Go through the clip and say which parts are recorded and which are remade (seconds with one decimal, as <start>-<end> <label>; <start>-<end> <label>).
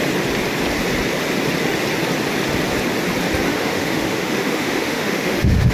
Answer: 0.0-3.5 recorded; 3.5-5.7 remade